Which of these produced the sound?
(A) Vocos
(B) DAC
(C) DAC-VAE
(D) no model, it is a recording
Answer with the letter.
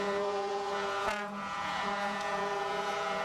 A